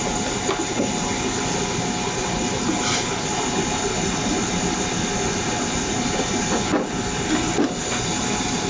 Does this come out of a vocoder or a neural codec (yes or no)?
no